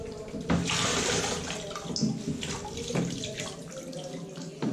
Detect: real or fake real